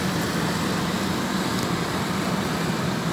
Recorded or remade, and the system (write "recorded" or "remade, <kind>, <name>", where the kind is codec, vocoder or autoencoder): recorded